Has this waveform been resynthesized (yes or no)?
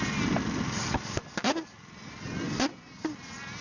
no